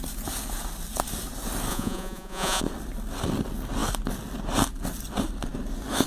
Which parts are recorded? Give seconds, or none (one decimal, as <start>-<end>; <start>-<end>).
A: 0.0-1.7; 2.6-6.1